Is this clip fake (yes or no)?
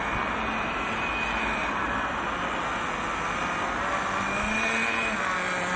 no